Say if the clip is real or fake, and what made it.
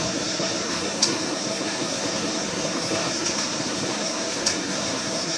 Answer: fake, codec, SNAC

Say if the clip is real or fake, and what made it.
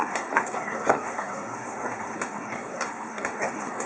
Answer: fake, codec, SNAC